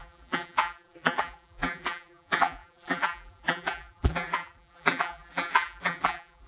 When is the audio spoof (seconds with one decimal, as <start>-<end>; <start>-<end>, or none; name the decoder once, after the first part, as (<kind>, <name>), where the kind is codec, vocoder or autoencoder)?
0.0-6.5 (vocoder, BigVGAN v2)